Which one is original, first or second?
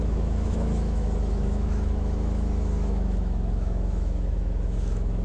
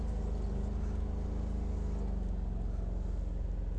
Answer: second